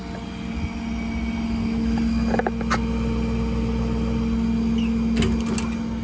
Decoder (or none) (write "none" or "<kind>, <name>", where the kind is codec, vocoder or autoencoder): none